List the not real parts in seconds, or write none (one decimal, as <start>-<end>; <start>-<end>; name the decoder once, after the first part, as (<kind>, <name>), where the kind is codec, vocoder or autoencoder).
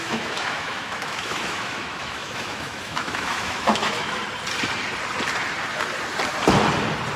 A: 0.0-4.2 (autoencoder, DAC-VAE)